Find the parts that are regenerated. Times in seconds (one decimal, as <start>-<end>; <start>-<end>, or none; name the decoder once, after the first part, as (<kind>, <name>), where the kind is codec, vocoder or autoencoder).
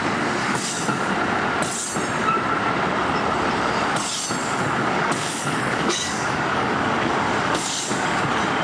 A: 0.4-1.1 (codec, DAC); 4.4-8.2